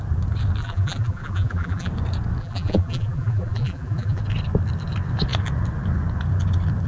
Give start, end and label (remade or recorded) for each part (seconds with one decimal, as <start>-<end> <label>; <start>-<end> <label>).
0.0-0.6 recorded; 0.6-1.9 remade; 1.9-2.4 recorded; 2.4-4.2 remade; 4.2-6.9 recorded